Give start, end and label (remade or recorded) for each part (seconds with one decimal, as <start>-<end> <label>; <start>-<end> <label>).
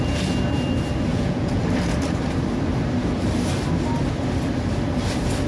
0.0-1.1 recorded; 1.1-1.6 remade; 1.6-5.5 recorded